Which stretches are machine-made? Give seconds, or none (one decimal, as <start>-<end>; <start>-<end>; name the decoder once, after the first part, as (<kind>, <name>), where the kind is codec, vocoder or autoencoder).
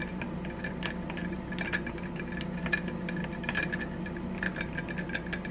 none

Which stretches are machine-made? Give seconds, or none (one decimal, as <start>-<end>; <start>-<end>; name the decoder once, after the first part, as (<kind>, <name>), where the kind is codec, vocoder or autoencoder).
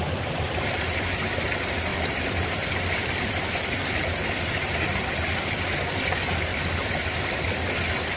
none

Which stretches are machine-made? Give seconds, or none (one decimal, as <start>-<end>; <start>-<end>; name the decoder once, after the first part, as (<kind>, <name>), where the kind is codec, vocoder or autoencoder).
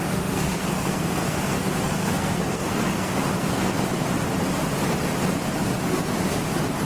0.0-4.1 (codec, SNAC)